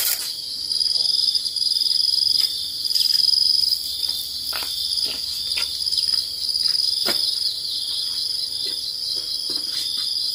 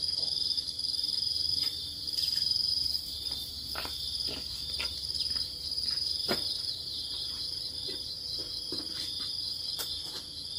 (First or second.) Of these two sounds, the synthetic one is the second